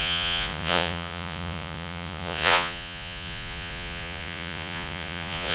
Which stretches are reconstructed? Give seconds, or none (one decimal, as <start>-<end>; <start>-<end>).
0.0-5.5